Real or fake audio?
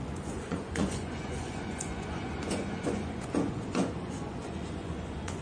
fake